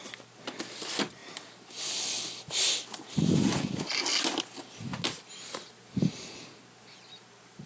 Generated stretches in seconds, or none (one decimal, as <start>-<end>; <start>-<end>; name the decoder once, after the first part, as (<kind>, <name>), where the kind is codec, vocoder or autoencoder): none